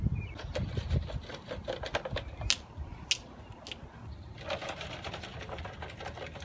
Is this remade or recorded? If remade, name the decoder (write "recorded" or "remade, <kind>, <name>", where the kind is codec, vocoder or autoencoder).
recorded